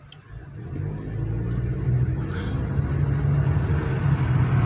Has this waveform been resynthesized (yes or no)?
no